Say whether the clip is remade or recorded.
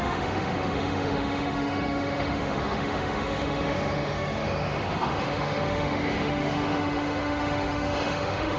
remade